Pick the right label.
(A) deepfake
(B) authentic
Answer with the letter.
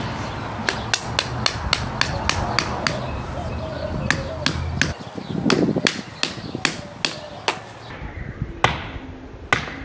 B